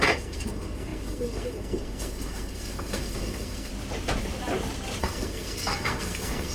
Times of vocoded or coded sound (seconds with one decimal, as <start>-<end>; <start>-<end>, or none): 0.0-3.7; 5.0-6.5